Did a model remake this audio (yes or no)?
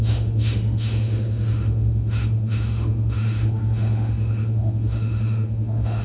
yes